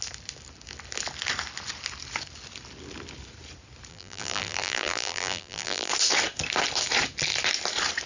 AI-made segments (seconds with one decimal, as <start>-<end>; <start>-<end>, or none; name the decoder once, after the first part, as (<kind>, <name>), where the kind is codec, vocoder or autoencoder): 3.9-5.9 (vocoder, BigVGAN v2)